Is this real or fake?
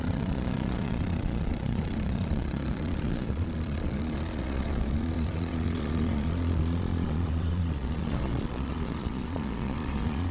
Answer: fake